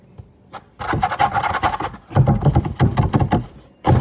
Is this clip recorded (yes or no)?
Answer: yes